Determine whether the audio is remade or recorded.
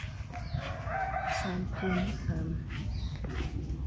recorded